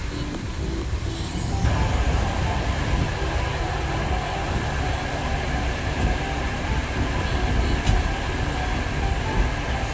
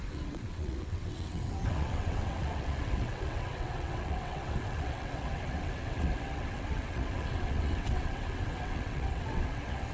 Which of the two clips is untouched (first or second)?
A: first